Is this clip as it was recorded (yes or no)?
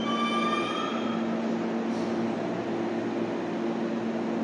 yes